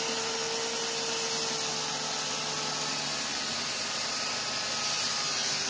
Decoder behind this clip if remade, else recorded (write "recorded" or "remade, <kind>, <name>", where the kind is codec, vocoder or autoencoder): recorded